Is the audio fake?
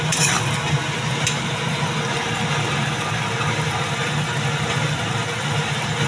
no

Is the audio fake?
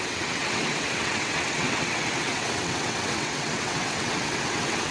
yes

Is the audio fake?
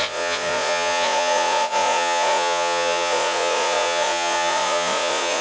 yes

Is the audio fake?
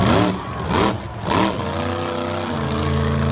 no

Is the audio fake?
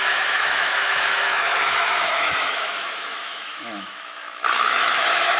yes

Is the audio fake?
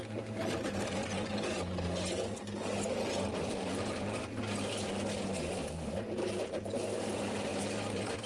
no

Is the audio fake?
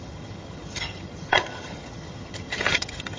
yes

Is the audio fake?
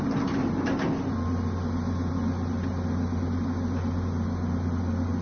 no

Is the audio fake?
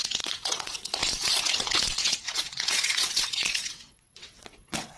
yes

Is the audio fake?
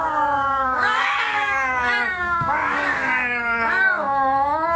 yes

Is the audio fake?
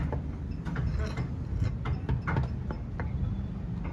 no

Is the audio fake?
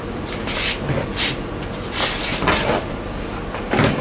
no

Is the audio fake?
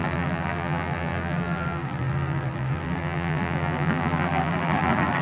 yes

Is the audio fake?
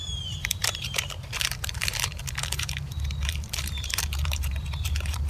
yes